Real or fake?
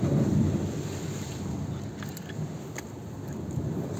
real